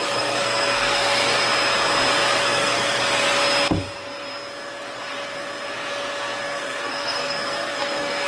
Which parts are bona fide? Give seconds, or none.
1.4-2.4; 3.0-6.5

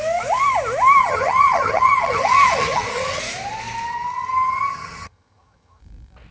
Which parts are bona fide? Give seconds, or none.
0.0-1.0; 3.2-3.9; 5.8-6.3

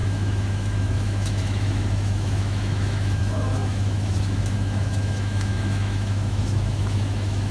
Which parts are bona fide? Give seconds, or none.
none

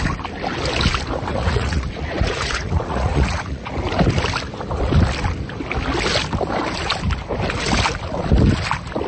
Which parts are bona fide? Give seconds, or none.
0.0-1.3; 3.7-9.1

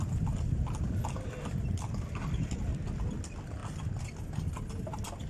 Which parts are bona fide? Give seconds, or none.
0.0-5.3

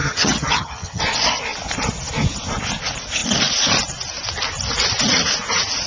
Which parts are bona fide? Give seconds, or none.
1.0-5.9

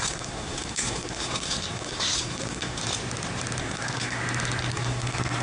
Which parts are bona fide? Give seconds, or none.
2.8-3.6; 4.2-4.7